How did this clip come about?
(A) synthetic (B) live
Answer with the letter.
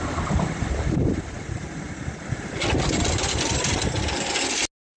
B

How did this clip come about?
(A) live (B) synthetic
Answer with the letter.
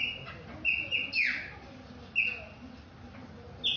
A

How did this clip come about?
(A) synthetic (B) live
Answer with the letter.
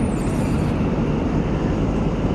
B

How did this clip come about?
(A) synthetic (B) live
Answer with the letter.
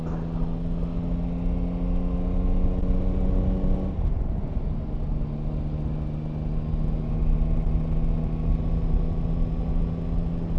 B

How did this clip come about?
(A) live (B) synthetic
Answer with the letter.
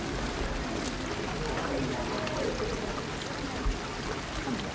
A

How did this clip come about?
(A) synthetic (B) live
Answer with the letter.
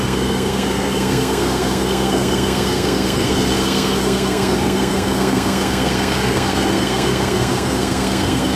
A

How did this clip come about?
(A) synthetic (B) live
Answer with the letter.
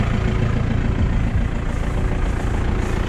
B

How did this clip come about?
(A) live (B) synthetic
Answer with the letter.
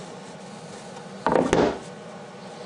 A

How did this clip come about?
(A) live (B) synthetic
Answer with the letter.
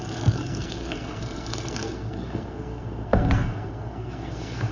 B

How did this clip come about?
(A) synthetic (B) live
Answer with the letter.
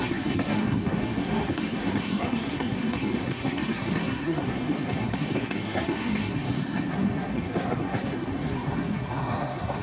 A